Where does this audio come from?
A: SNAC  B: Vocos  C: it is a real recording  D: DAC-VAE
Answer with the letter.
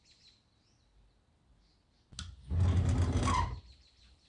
C